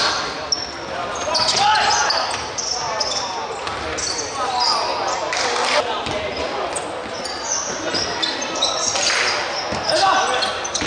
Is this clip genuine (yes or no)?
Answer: yes